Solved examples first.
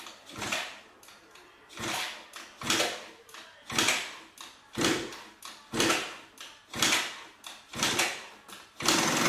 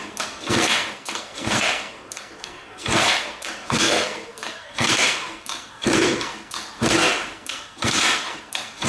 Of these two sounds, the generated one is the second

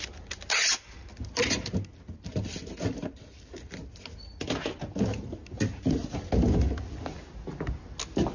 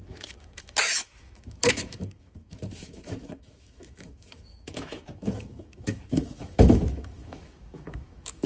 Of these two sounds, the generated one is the second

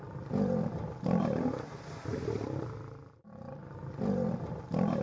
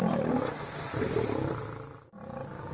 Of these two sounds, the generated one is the first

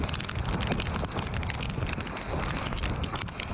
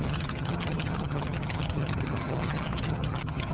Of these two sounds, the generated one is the second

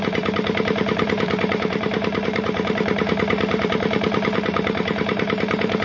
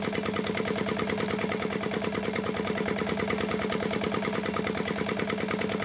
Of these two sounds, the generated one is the first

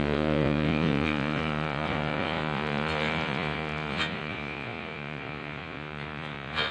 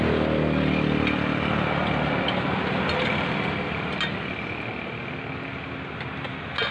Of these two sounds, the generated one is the first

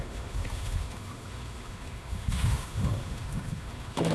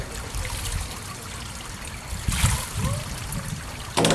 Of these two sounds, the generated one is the first